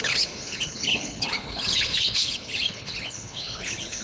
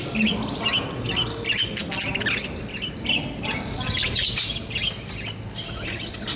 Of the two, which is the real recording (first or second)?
second